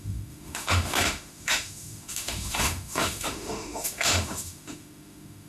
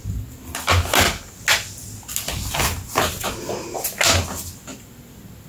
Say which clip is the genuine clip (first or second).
second